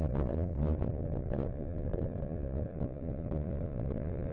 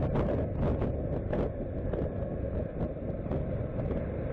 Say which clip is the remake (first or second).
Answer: first